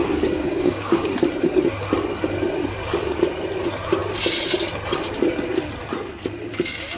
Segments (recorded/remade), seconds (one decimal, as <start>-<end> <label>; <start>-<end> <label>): 0.0-1.1 remade; 1.1-7.0 recorded